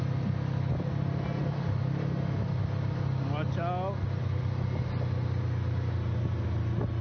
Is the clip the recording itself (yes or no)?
yes